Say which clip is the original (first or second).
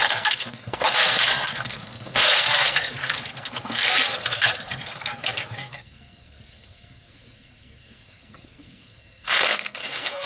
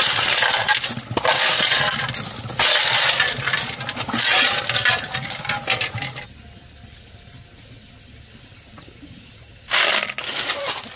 second